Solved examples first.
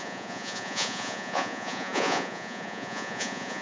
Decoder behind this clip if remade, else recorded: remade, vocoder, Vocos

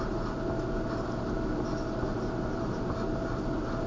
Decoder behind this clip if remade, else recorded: recorded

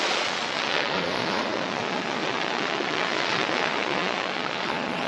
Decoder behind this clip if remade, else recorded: remade, vocoder, Vocos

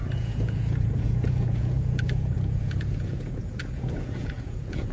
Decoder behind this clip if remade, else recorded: remade, vocoder, Vocos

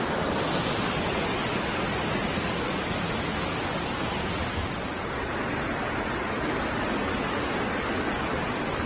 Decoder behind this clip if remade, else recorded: recorded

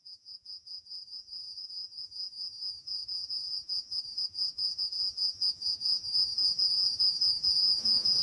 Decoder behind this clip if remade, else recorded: remade, vocoder, Vocos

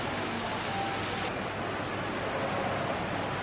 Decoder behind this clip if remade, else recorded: recorded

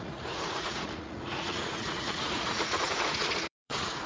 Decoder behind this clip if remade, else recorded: remade, vocoder, Vocos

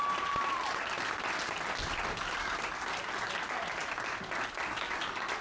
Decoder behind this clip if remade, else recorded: recorded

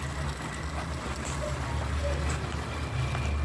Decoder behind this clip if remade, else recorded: recorded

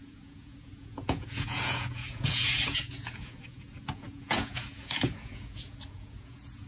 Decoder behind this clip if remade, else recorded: remade, vocoder, Vocos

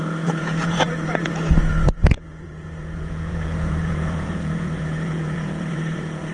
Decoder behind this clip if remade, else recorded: remade, vocoder, Vocos